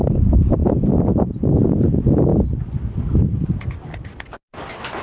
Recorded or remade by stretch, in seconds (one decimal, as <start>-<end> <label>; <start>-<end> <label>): 0.0-0.6 recorded; 0.6-1.1 remade; 1.1-5.0 recorded